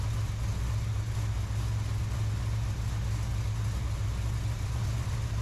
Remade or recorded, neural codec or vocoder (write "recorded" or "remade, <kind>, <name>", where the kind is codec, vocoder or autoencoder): recorded